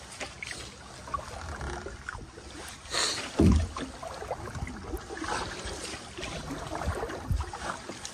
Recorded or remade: recorded